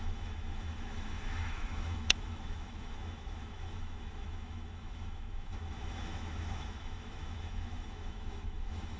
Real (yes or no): no